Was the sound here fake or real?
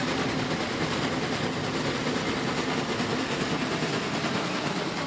real